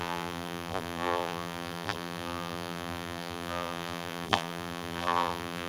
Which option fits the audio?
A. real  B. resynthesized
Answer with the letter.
B